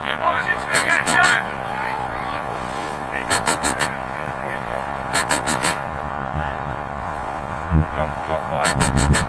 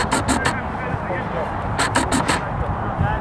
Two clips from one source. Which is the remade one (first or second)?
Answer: first